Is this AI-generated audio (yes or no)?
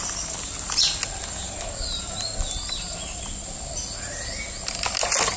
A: no